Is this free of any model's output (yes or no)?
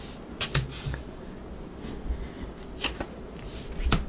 yes